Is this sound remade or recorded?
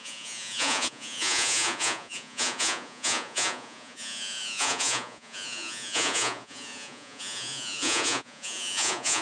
remade